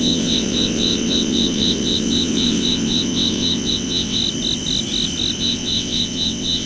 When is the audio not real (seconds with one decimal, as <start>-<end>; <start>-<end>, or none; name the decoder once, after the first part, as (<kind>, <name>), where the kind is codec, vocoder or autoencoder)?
0.0-4.2 (vocoder, WaveNeXt); 5.4-6.7